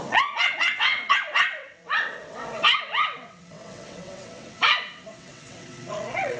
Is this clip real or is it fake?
fake